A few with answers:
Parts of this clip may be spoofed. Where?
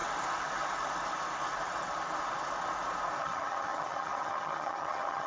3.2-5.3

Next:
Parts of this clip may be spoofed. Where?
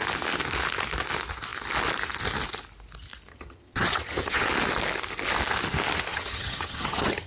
3.3-4.5; 6.1-7.3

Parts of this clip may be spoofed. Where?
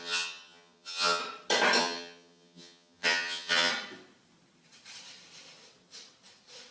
0.0-1.2; 1.8-3.7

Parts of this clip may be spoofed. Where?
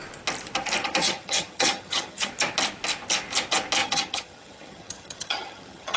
1.0-2.3; 3.8-6.0